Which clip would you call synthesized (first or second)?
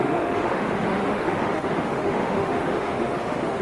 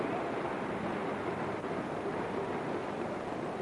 first